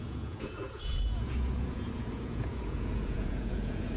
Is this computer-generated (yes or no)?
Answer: yes